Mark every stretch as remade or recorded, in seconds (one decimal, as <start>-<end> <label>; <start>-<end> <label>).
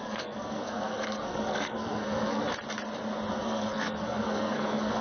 0.0-2.4 remade; 2.4-3.3 recorded; 3.3-5.0 remade